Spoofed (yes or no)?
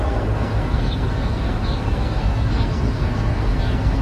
yes